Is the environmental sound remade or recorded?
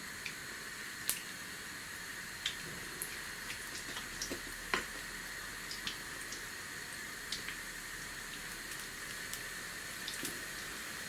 recorded